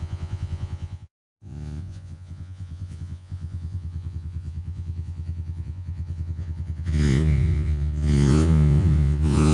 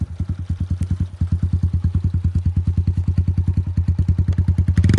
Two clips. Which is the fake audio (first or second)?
first